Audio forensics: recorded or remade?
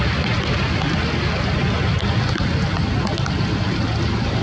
recorded